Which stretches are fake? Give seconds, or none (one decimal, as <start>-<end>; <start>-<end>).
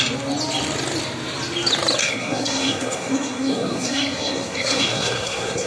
2.0-5.7